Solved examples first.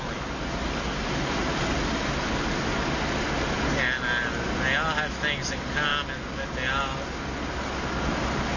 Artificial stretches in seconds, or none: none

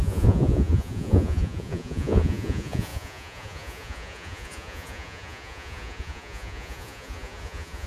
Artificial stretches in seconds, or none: 0.0-7.9 (vocoder, Vocos)

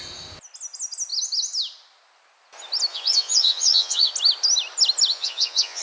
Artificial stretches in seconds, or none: 2.9-4.1 (vocoder, Vocos); 5.1-5.8